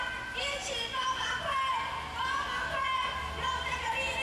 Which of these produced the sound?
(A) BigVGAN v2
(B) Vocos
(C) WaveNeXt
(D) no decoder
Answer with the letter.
D